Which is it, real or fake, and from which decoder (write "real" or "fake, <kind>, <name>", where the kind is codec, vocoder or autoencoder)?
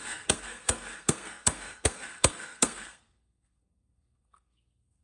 fake, codec, SNAC